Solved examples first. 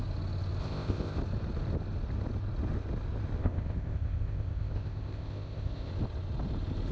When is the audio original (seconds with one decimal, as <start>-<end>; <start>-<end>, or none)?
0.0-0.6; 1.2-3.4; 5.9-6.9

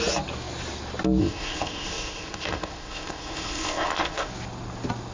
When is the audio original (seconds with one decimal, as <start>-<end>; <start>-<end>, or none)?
0.0-1.2; 4.3-5.1

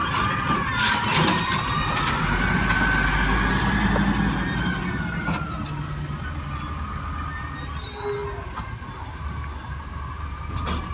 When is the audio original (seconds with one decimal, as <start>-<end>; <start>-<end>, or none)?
0.0-10.9

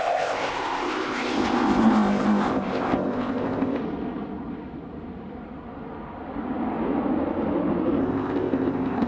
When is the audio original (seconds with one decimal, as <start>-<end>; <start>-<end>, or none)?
3.8-8.0